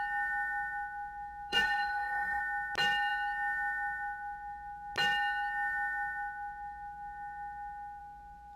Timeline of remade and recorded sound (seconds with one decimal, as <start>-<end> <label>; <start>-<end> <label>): 0.0-1.5 recorded; 1.5-2.4 remade; 2.4-8.6 recorded